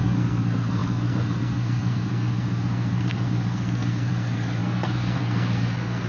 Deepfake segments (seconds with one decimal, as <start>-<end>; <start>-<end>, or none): 0.0-6.1